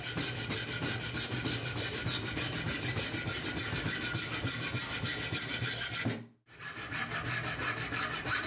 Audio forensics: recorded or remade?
recorded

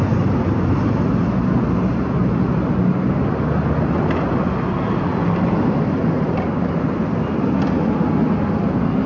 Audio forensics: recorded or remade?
recorded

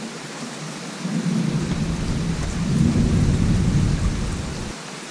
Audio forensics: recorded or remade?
recorded